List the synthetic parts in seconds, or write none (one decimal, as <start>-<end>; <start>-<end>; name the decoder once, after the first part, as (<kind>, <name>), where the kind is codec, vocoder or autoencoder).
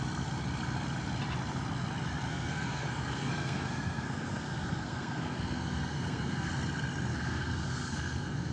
2.3-6.5 (codec, SNAC); 7.1-8.5